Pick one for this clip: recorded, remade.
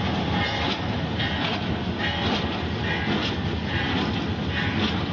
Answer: recorded